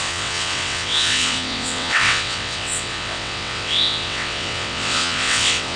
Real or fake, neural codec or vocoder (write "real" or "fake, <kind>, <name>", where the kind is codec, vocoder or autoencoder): fake, vocoder, WaveNeXt